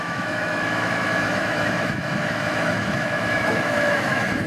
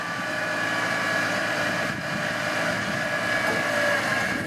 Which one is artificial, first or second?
first